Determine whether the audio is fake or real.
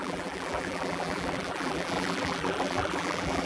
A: fake